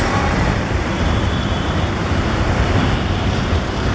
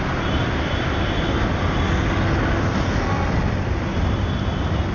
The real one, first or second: second